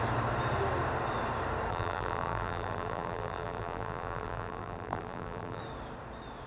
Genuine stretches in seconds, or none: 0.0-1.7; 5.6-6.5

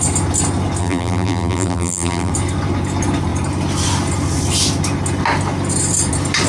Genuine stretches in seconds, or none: 0.0-0.8; 2.3-6.5

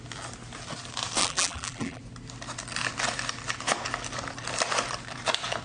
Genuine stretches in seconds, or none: 0.0-1.2; 2.0-5.6

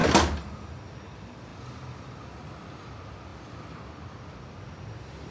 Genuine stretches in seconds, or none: 0.8-5.3

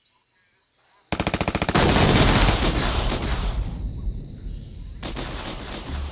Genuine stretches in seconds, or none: 0.0-3.3